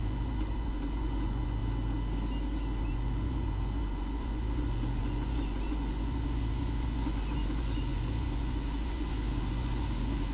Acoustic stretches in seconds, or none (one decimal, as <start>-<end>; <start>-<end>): 1.6-2.8